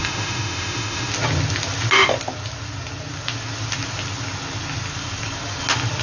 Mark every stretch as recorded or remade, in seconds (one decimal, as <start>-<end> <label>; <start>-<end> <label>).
0.0-1.1 remade; 1.1-6.0 recorded